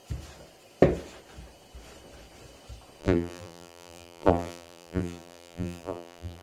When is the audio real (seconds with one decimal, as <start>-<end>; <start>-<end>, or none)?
0.0-3.0